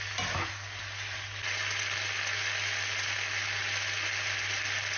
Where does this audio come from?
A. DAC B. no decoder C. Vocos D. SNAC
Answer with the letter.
B